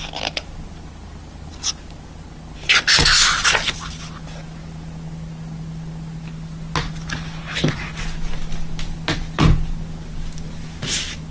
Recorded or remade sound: recorded